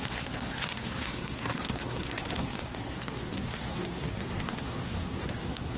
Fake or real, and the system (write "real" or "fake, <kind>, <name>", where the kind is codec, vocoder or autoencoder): fake, codec, SNAC